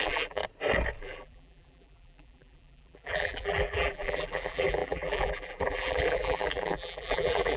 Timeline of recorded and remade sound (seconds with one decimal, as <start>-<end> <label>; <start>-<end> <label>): 0.0-0.4 remade; 0.4-1.0 recorded; 1.0-7.6 remade